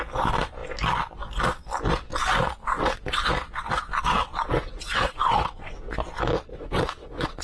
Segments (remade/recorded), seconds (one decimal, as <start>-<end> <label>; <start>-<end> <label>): 0.0-2.6 recorded; 2.6-3.3 remade; 3.3-4.2 recorded; 4.2-5.9 remade; 5.9-6.5 recorded; 6.5-7.4 remade